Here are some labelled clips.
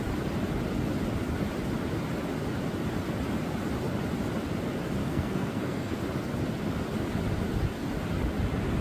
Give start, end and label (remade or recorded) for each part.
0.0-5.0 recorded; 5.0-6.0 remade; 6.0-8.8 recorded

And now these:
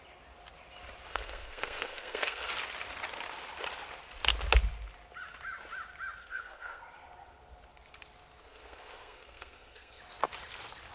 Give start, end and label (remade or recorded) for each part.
0.0-1.1 recorded; 1.1-2.5 remade; 2.5-6.2 recorded; 6.2-6.8 remade; 6.8-8.4 recorded; 8.4-10.0 remade; 10.0-10.9 recorded

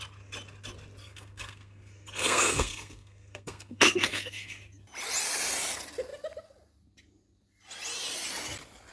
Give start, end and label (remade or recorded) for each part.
0.0-1.0 recorded; 1.0-4.6 remade; 4.6-8.9 recorded

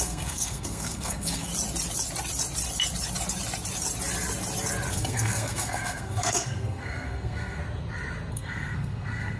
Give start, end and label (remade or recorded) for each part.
0.0-1.5 remade; 1.5-4.9 recorded; 4.9-7.6 remade; 7.6-8.3 recorded; 8.3-9.4 remade

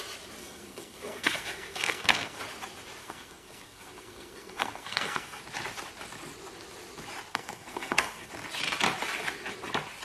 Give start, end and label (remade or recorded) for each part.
0.0-0.4 recorded; 0.4-2.4 remade; 2.4-3.0 recorded; 3.0-5.4 remade; 5.4-7.3 recorded; 7.3-8.3 remade; 8.3-10.0 recorded

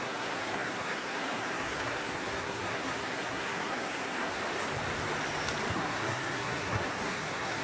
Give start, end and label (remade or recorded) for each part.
0.0-4.4 remade; 4.4-5.7 recorded; 5.7-7.6 remade

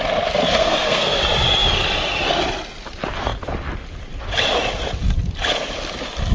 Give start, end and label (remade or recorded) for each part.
0.0-0.6 recorded; 0.6-1.2 remade; 1.2-6.3 recorded